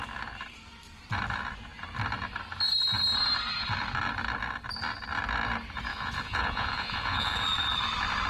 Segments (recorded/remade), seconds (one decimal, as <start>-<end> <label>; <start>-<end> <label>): 0.0-5.9 recorded; 5.9-7.4 remade; 7.4-8.3 recorded